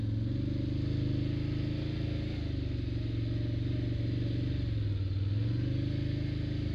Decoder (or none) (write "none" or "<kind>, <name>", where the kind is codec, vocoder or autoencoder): none